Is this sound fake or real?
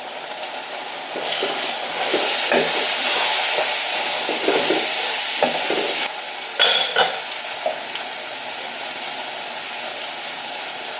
real